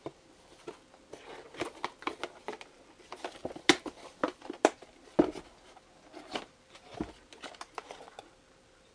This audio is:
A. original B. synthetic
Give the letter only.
A